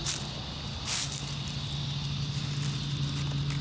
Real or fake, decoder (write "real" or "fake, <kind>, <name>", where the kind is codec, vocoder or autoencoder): real